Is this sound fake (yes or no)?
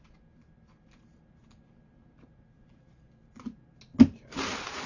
no